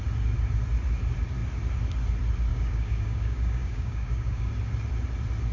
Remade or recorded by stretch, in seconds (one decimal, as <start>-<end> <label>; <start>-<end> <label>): 0.0-2.5 recorded; 2.5-4.5 remade; 4.5-5.5 recorded